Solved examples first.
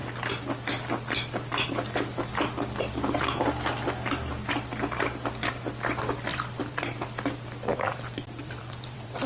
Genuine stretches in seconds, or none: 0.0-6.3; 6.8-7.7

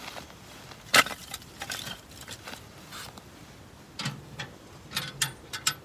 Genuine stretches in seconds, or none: 0.0-1.2; 3.2-5.8